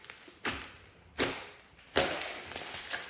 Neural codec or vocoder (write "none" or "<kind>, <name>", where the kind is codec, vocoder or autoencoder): none